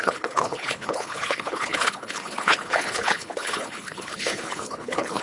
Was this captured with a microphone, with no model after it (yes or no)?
no